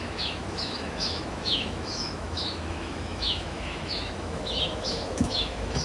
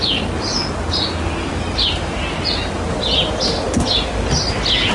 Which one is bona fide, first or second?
second